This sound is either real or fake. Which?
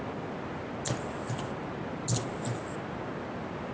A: real